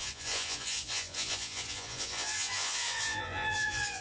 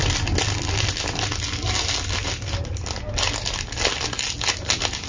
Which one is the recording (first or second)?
second